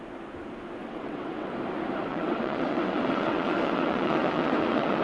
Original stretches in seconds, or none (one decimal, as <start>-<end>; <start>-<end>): 0.0-0.8; 1.5-2.1